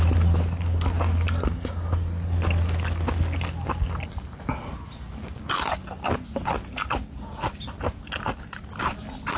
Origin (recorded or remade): recorded